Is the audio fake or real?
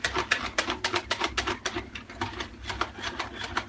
real